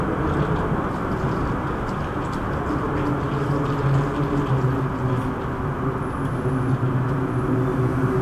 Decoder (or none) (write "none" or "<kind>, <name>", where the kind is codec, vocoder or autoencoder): none